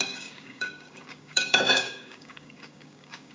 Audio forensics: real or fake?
fake